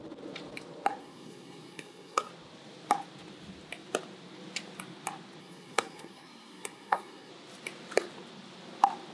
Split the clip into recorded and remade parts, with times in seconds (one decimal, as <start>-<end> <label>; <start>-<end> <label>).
0.0-1.0 recorded; 1.0-2.3 remade; 2.3-5.4 recorded; 5.4-7.3 remade; 7.3-9.1 recorded